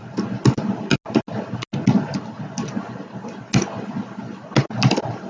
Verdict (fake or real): real